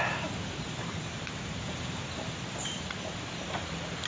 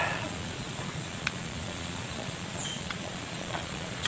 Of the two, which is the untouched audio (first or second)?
first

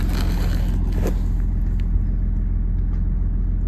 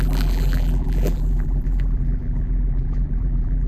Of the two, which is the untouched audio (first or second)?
first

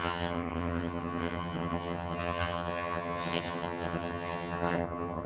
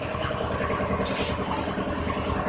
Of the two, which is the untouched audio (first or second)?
second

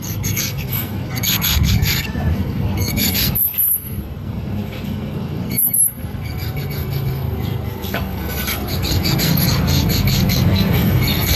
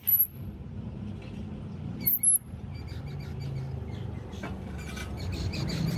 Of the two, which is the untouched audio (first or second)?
second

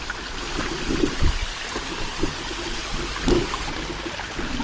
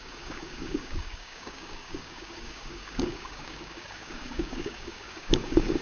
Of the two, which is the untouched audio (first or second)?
first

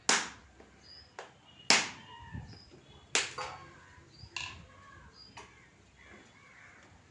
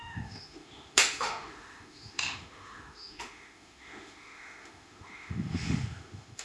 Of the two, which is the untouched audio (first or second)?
first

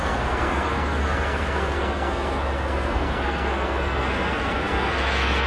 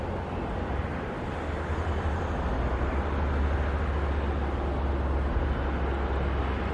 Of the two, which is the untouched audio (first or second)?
second